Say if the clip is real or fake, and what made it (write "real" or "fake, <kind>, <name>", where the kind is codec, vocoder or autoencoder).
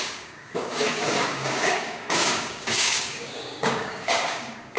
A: fake, codec, DAC